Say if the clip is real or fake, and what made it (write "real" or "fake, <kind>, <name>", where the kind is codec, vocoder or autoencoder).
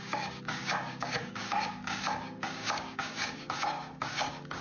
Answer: fake, codec, DAC